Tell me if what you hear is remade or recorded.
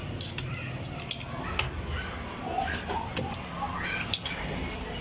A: recorded